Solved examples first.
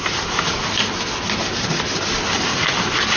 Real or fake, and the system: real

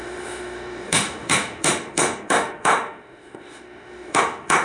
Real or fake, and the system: fake, autoencoder, DAC-VAE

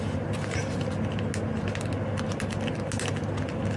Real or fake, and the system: real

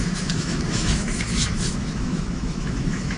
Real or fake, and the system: fake, autoencoder, DAC-VAE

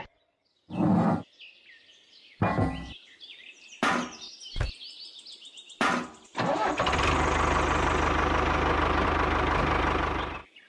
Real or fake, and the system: real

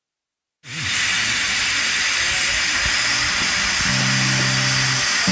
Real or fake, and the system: real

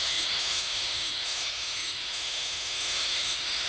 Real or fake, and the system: fake, autoencoder, DAC-VAE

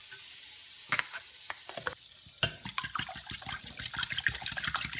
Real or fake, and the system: real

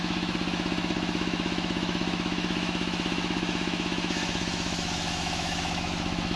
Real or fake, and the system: fake, autoencoder, DAC-VAE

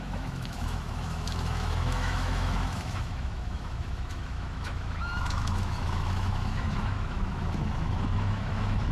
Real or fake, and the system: fake, autoencoder, DAC-VAE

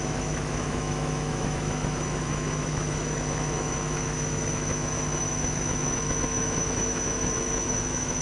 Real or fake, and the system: fake, autoencoder, DAC-VAE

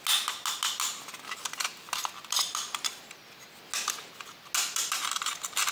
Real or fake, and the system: real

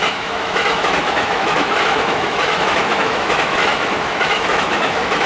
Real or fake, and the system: fake, autoencoder, DAC-VAE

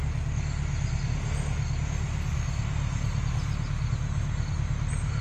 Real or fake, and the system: real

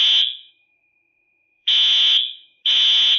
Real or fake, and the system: fake, autoencoder, DAC-VAE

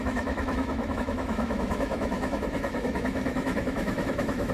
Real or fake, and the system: fake, autoencoder, DAC-VAE